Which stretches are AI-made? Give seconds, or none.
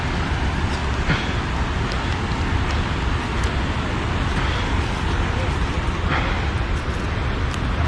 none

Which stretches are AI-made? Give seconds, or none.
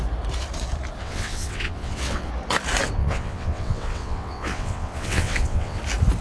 1.0-2.3 (vocoder, WaveNeXt); 3.0-5.8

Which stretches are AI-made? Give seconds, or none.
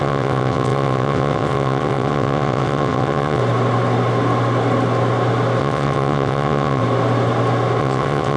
0.0-3.4 (vocoder, WaveNeXt); 5.6-6.8; 7.8-8.4